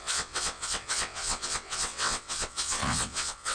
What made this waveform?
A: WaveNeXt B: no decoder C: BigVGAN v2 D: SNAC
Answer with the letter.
A